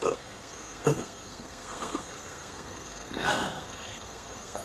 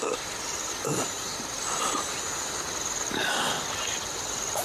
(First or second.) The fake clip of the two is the first